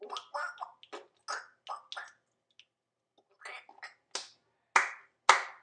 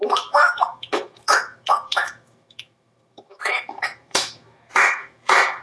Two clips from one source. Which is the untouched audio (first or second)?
first